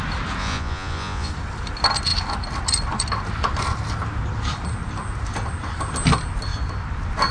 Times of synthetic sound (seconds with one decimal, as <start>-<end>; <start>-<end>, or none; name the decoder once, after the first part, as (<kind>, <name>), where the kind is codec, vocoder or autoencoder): 0.4-1.3 (vocoder, Vocos)